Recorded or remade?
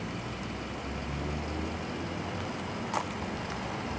recorded